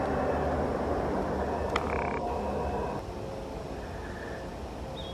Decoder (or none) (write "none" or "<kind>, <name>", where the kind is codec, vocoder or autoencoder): none